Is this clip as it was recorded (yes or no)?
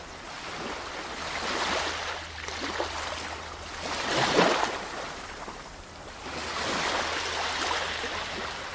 yes